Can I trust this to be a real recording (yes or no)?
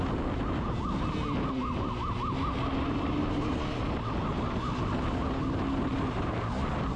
yes